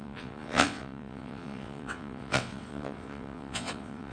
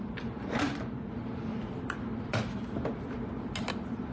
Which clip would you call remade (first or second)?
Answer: first